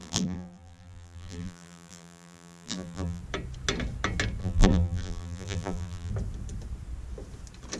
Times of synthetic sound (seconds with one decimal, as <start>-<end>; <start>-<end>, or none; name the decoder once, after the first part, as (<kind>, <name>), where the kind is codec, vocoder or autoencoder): 0.0-3.2 (vocoder, BigVGAN v2); 4.4-6.1